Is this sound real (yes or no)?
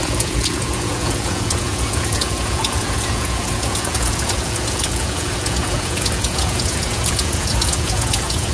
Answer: no